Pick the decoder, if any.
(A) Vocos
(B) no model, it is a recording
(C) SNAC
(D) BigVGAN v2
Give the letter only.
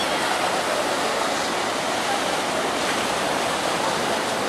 B